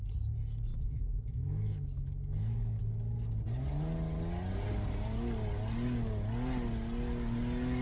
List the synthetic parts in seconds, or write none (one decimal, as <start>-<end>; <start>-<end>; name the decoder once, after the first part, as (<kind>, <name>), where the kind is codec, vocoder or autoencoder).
0.7-2.8 (autoencoder, DAC-VAE)